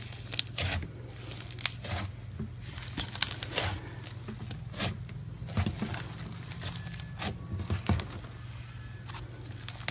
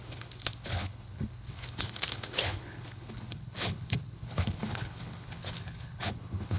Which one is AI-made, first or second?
second